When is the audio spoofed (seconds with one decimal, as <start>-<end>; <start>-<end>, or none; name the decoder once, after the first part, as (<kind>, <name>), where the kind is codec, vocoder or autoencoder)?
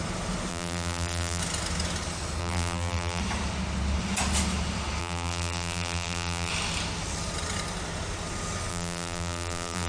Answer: 0.5-1.4 (vocoder, BigVGAN v2); 2.4-3.2; 5.0-6.5; 8.7-9.9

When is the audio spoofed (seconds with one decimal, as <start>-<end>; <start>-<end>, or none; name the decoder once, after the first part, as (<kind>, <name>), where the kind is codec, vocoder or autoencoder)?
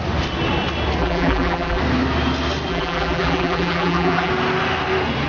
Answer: 1.0-1.8 (vocoder, BigVGAN v2); 2.7-4.3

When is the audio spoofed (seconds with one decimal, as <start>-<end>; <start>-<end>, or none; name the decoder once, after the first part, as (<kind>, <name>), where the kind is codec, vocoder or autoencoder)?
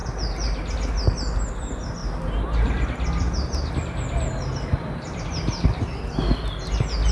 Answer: none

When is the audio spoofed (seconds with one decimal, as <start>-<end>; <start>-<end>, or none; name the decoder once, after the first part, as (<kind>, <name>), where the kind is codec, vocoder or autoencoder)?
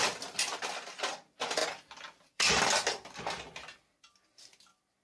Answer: 1.6-2.7 (vocoder, BigVGAN v2)